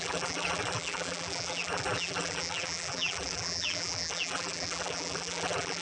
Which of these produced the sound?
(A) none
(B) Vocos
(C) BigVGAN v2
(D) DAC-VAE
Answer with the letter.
C